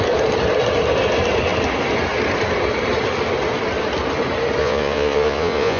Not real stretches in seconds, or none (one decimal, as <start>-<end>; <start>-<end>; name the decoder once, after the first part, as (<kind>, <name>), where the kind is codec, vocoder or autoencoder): 4.6-5.8 (vocoder, Vocos)